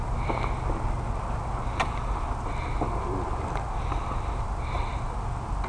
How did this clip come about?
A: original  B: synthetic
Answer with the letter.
A